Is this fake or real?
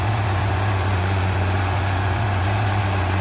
fake